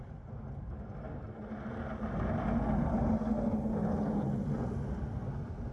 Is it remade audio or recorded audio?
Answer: recorded